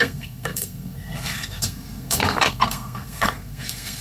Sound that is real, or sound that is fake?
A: fake